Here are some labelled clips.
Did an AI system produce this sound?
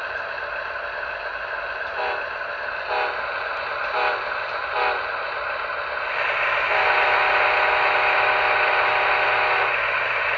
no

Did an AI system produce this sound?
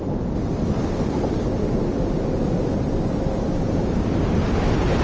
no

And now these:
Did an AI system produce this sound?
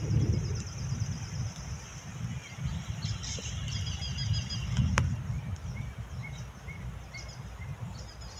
no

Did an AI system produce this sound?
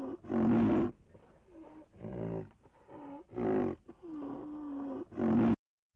no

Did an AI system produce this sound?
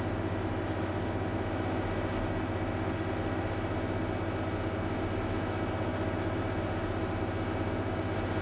no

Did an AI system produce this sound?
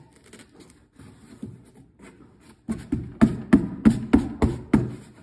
no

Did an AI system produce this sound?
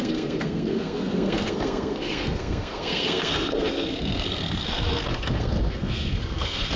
yes